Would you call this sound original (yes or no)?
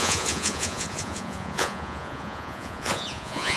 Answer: no